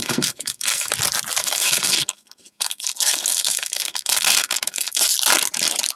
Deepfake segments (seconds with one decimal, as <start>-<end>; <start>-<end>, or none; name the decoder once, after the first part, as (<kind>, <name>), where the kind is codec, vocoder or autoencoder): 0.0-0.9 (codec, SNAC); 1.4-5.0